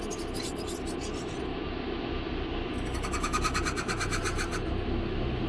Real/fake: real